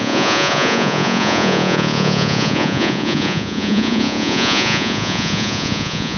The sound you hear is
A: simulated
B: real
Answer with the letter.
A